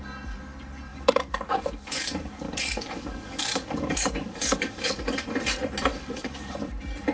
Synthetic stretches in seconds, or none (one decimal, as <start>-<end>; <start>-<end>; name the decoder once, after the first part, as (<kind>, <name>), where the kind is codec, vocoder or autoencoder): 0.9-5.2 (codec, DAC); 5.9-6.5